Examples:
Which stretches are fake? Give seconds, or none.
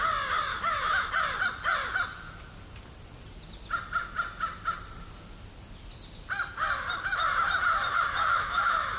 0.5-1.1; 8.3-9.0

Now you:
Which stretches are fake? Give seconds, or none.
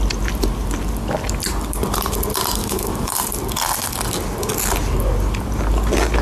2.6-3.1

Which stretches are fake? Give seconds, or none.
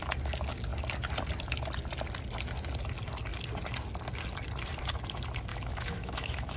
5.5-6.6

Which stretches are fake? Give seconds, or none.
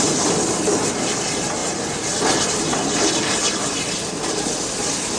none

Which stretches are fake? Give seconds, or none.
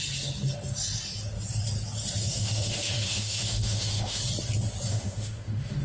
2.2-4.2; 4.9-5.8